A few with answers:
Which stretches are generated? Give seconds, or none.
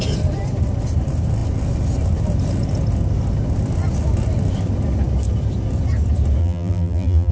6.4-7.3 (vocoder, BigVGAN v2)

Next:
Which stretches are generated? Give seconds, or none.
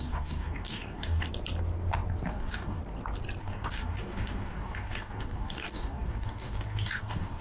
0.0-1.3 (codec, DAC); 2.3-2.8; 3.4-7.4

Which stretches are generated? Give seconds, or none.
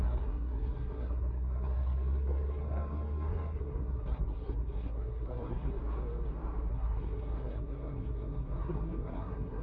0.0-5.7 (codec, SNAC); 6.7-9.6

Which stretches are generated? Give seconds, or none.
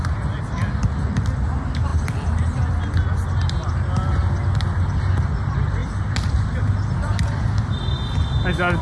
none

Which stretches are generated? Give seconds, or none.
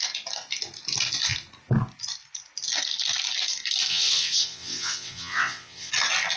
3.9-5.9 (vocoder, WaveNeXt)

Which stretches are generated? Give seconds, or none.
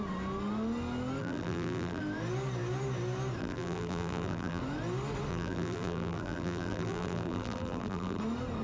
1.2-2.0 (vocoder, BigVGAN v2); 3.4-4.6; 5.3-8.2